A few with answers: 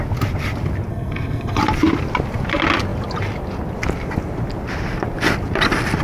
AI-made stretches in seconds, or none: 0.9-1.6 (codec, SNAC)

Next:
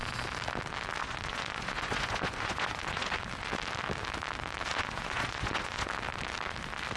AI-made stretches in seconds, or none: 1.0-3.2 (vocoder, Vocos); 4.7-5.9